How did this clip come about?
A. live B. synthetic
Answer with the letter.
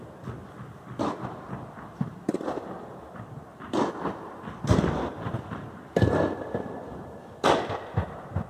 A